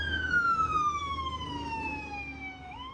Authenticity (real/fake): fake